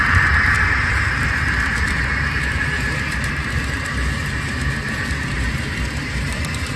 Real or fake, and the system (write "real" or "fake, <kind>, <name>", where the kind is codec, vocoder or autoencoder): fake, vocoder, BigVGAN v2